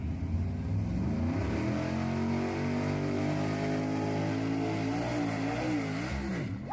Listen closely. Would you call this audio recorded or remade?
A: recorded